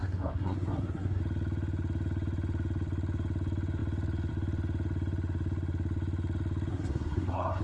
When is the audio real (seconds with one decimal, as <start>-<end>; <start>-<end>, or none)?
1.2-6.7